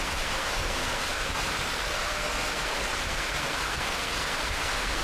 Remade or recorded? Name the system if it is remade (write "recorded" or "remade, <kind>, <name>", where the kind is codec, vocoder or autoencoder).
remade, codec, SNAC